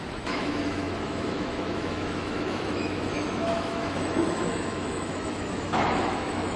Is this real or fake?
fake